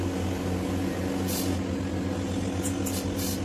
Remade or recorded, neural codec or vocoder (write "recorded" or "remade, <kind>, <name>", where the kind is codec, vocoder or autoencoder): recorded